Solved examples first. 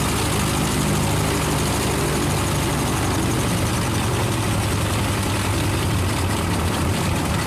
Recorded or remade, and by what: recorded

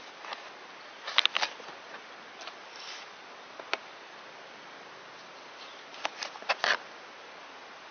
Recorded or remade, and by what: recorded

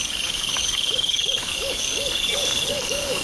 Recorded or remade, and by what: remade, codec, DAC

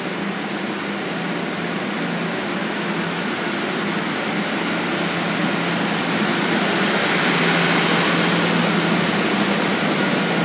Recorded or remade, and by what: recorded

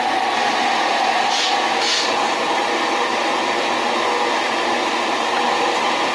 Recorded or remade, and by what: recorded